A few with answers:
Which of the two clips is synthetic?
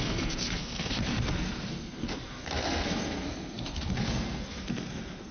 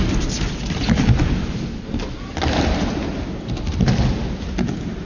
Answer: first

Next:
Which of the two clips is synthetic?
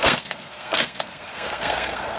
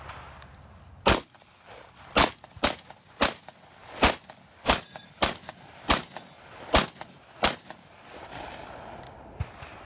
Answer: first